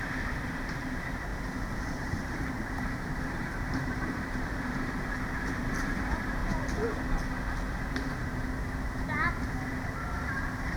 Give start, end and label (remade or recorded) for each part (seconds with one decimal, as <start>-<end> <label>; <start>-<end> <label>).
0.0-1.3 remade; 1.3-1.9 recorded; 1.9-6.4 remade; 6.4-7.7 recorded; 7.7-10.8 remade